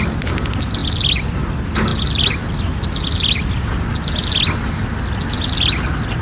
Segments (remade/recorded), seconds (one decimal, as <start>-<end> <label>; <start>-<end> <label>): 0.0-6.2 recorded